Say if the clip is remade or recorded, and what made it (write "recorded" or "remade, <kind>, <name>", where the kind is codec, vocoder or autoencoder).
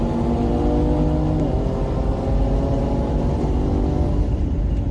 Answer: recorded